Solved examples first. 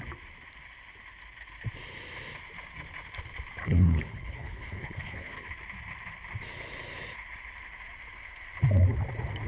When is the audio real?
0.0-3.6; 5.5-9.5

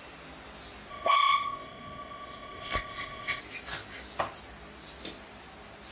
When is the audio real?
0.0-0.9; 3.4-5.9

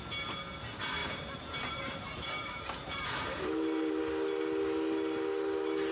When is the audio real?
0.0-1.0; 4.0-5.9

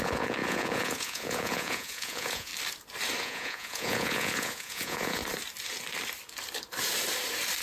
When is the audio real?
2.5-3.2; 5.2-7.6